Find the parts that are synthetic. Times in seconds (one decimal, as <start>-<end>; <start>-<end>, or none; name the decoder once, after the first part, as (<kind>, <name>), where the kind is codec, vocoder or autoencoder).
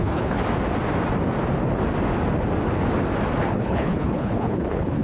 0.0-0.4 (codec, HILCodec); 3.4-5.0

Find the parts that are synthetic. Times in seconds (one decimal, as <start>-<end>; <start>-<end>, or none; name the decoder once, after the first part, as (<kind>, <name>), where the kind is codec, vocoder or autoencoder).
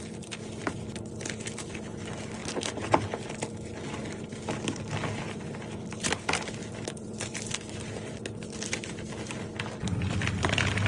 none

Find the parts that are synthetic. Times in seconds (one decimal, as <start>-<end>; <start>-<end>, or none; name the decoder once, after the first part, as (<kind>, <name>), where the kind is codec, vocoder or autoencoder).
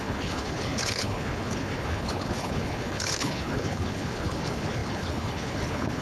0.0-6.0 (codec, HILCodec)